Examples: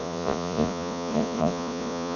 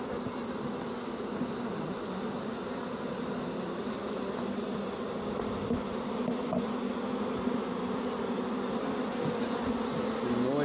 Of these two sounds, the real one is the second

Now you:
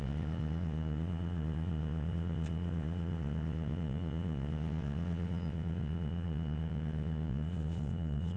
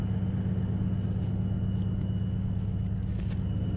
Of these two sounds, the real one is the second